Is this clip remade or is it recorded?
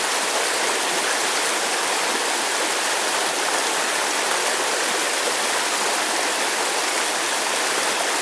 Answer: recorded